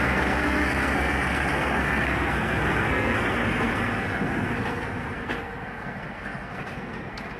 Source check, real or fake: fake